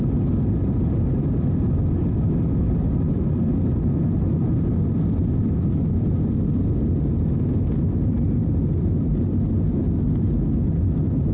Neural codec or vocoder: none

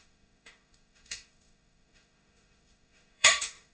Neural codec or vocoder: autoencoder, DAC-VAE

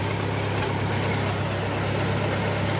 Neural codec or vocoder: none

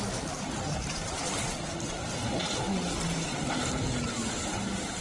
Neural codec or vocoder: none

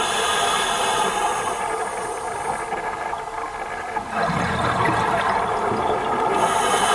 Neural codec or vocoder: none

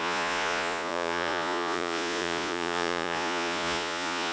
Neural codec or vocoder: vocoder, Vocos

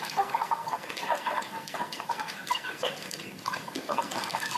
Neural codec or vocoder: codec, SNAC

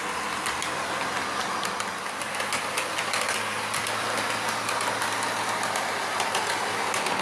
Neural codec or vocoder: none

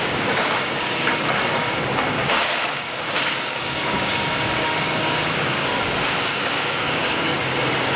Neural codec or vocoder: codec, DAC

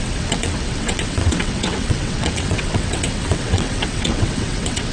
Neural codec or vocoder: vocoder, WaveNeXt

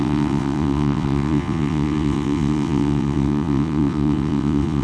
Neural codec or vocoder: vocoder, WaveNeXt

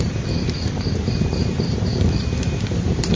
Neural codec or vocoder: vocoder, BigVGAN v2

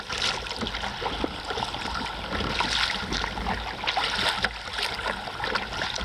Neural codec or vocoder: none